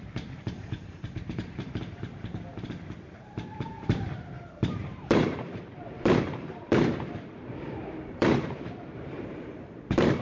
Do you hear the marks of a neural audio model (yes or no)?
yes